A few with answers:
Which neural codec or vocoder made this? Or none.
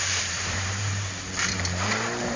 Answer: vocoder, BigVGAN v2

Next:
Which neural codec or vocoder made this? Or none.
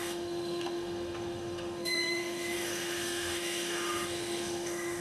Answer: autoencoder, DAC-VAE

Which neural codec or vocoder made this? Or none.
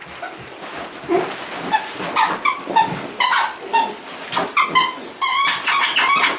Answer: none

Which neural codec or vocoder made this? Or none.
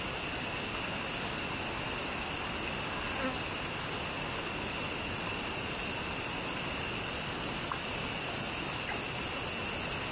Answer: none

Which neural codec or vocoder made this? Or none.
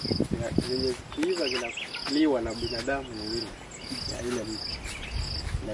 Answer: none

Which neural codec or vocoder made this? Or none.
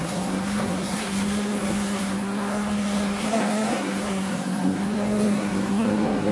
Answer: codec, SNAC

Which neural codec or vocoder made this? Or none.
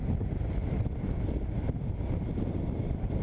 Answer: none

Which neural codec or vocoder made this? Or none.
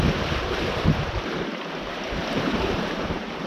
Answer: vocoder, BigVGAN v2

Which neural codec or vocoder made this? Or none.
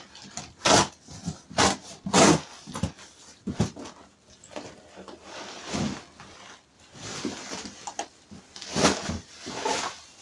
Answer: none